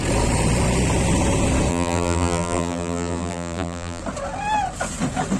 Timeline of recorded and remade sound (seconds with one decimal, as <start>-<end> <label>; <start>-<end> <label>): 0.0-1.7 recorded; 1.7-4.0 remade; 4.0-5.4 recorded